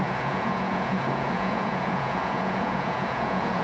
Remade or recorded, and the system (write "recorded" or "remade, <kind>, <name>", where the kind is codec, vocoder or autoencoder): remade, vocoder, Vocos